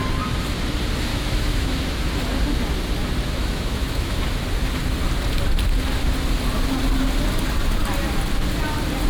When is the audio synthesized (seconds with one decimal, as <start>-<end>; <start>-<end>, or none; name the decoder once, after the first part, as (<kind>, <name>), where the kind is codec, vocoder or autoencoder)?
1.1-1.8 (autoencoder, DAC-VAE); 3.4-4.2